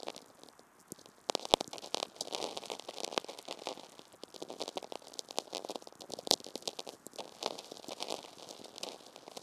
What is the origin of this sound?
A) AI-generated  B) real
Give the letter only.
B